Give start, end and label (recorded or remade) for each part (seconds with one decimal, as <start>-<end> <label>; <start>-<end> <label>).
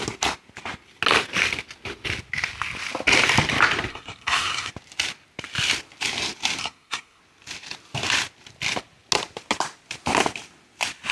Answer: 0.0-3.9 recorded; 3.9-4.7 remade; 4.7-6.6 recorded; 6.6-7.2 remade; 7.2-11.1 recorded